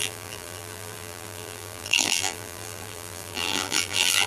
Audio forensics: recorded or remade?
remade